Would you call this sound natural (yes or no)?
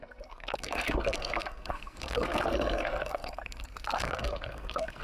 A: no